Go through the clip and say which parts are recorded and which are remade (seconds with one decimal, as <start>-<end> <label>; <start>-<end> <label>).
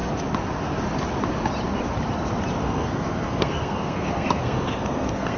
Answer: 0.0-2.6 recorded; 2.6-5.4 remade